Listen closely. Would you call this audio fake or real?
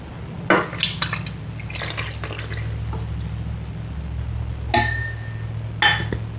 real